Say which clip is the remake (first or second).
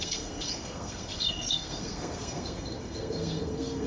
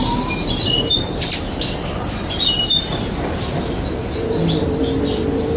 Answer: first